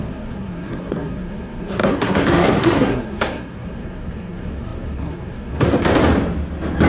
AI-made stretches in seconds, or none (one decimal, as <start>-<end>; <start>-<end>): 0.0-5.9